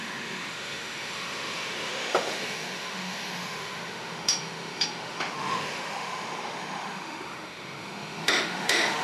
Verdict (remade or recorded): remade